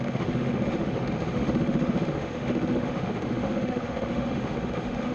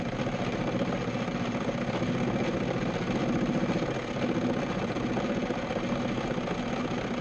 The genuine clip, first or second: second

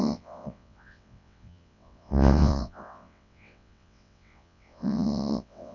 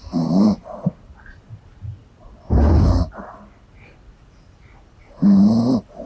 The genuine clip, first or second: second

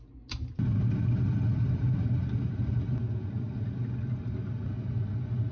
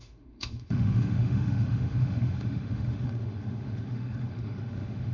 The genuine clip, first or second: first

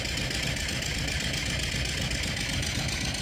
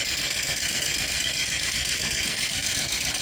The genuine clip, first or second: first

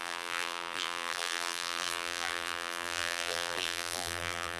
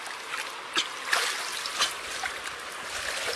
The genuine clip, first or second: second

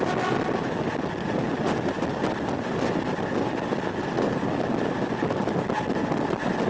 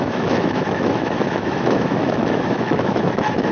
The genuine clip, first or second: first